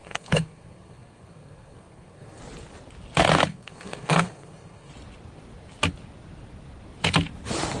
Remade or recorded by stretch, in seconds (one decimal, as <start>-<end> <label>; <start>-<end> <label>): 0.0-2.4 remade; 2.4-3.5 recorded; 3.5-4.9 remade; 4.9-7.8 recorded